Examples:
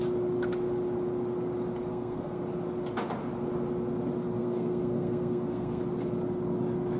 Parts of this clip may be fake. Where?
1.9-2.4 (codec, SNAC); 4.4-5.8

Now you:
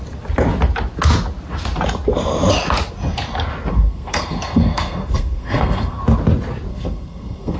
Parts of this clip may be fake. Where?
3.7-6.0 (codec, SNAC); 6.7-7.6

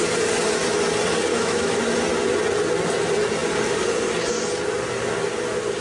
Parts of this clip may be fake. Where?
1.3-1.8 (autoencoder, DAC-VAE)

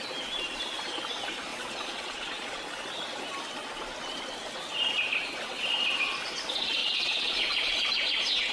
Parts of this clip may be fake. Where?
1.5-2.6 (vocoder, Vocos); 6.8-7.7

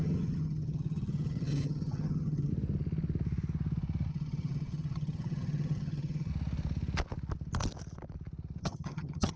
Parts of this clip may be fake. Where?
0.0-2.5 (vocoder, HiFi-GAN); 4.1-6.3; 8.6-9.4